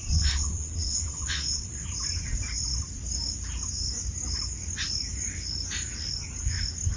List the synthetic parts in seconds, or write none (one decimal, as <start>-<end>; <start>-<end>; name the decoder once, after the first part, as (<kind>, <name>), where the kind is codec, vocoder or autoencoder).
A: 0.0-1.8 (vocoder, WaveNeXt)